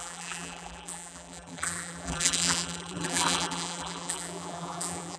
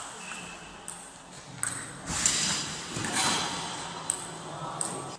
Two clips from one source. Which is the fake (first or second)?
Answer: first